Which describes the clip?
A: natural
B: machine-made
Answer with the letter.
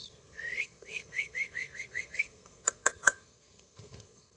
B